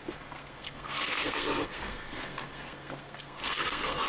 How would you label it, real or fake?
fake